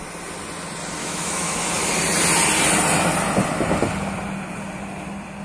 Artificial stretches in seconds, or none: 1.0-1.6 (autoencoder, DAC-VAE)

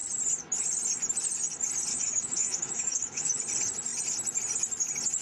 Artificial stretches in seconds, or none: 1.9-3.4 (autoencoder, DAC-VAE)